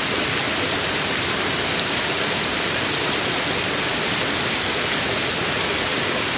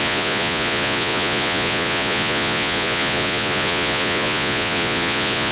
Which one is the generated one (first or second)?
second